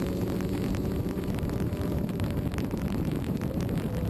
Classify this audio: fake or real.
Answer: fake